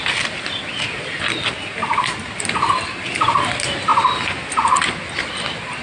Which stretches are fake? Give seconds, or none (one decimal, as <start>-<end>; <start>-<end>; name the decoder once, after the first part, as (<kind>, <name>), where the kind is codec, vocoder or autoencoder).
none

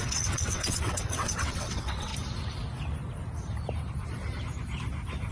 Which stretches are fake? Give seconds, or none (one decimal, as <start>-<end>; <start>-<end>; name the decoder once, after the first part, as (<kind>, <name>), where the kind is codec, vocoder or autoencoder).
0.0-2.1 (vocoder, WaveNeXt)

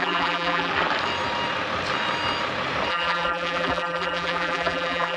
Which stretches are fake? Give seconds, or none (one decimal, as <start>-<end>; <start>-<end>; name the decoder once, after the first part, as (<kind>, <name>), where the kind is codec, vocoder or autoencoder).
0.0-0.7 (vocoder, BigVGAN v2); 2.9-5.2

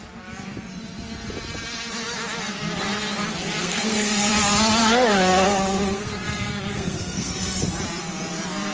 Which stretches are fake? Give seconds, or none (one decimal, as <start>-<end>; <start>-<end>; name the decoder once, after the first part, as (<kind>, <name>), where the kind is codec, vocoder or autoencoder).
3.6-4.3 (codec, SNAC); 4.8-7.6

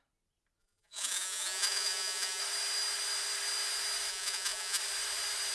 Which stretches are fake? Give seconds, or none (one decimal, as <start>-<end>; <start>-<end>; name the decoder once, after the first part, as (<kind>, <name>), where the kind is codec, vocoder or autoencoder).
0.6-2.4 (vocoder, Vocos); 4.1-4.8